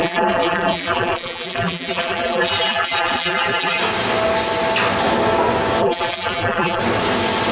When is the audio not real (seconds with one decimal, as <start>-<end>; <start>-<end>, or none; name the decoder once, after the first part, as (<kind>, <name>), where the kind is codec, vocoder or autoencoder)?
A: 0.0-3.8 (vocoder, BigVGAN v2); 5.8-6.8